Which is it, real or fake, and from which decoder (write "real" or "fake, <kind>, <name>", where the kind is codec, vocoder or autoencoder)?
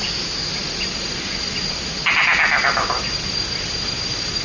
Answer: real